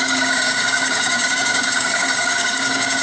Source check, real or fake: fake